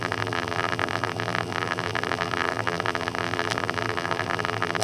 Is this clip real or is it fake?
fake